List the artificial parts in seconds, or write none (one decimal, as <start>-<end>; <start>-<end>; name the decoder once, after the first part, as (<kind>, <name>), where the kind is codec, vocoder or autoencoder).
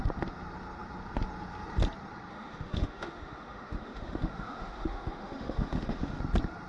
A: 2.3-6.2 (autoencoder, DAC-VAE)